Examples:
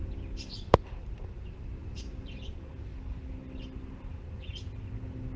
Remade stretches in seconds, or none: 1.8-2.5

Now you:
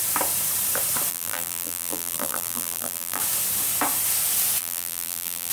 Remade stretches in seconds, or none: 1.1-3.2; 4.6-5.5